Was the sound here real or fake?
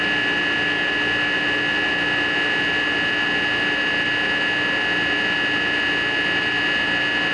real